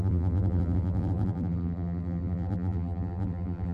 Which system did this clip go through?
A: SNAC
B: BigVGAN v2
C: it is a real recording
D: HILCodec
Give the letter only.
B